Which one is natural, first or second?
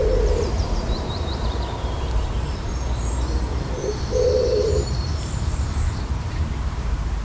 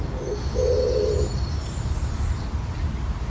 second